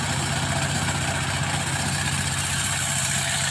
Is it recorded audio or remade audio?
recorded